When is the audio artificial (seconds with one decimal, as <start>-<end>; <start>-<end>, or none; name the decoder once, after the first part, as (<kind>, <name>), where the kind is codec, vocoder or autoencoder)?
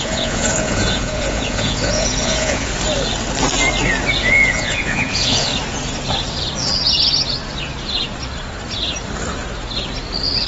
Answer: 0.0-2.7 (vocoder, Vocos); 4.2-5.5